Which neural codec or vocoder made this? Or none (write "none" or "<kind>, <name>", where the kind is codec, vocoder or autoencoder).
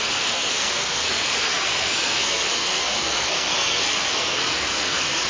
codec, SNAC